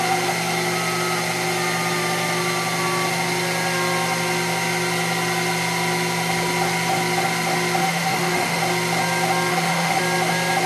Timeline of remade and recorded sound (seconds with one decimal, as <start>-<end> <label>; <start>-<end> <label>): 0.0-7.8 recorded; 7.8-8.6 remade; 8.6-9.5 recorded; 9.5-10.0 remade; 10.0-10.7 recorded